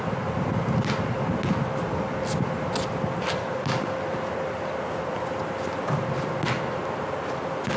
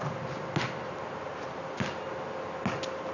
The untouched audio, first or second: first